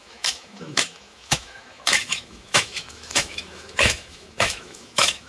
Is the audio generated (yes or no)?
yes